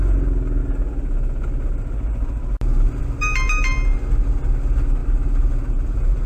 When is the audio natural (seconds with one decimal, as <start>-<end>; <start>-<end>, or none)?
0.0-6.3